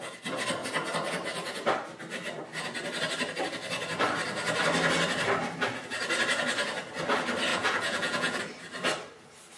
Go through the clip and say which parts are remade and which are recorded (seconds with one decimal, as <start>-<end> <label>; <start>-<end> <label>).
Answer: 0.0-7.5 recorded; 7.5-8.4 remade; 8.4-9.6 recorded